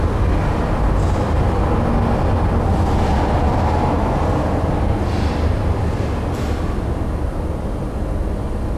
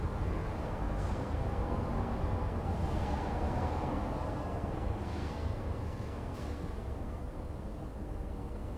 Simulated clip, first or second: second